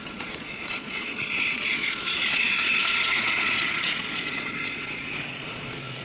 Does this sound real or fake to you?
fake